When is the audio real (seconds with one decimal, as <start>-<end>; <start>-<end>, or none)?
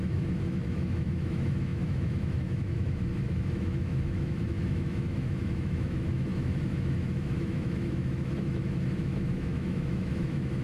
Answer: none